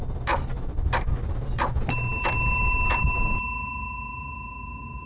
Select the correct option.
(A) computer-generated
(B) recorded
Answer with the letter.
B